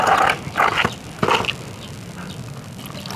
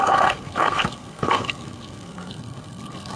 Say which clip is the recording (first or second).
first